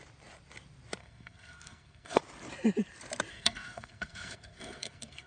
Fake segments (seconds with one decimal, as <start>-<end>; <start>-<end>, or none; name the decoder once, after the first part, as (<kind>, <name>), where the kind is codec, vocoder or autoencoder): 1.0-2.2 (codec, SNAC); 3.3-5.3